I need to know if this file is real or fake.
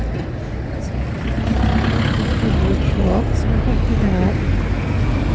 real